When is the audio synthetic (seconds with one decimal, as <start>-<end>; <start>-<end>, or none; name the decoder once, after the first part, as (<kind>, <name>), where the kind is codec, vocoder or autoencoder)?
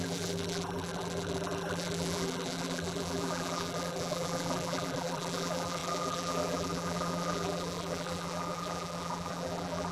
0.0-9.9 (vocoder, BigVGAN v2)